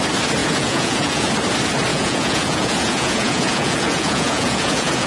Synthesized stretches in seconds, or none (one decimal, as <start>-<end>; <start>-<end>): 0.4-1.3; 1.9-5.1